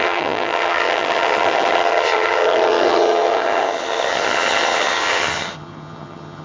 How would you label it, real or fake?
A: fake